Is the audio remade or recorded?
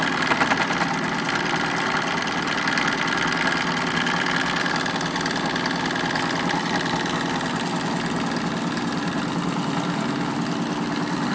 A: recorded